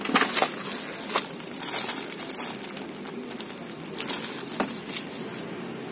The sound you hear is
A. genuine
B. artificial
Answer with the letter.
A